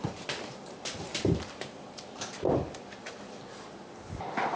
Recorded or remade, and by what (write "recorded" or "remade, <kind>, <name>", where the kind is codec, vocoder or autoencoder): remade, vocoder, BigVGAN v2